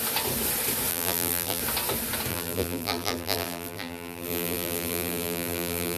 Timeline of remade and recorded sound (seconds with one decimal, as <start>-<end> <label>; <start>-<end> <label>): 0.0-0.9 recorded; 0.9-1.6 remade; 1.6-2.3 recorded; 2.3-6.0 remade